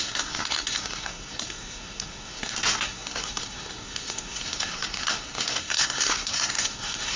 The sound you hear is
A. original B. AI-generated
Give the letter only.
B